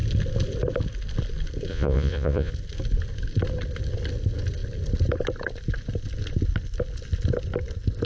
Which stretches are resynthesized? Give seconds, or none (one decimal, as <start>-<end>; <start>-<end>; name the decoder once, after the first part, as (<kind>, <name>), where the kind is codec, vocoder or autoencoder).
1.7-2.5 (vocoder, Vocos)